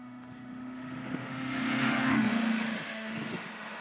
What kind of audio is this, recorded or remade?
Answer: remade